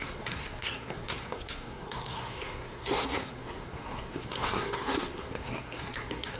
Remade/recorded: remade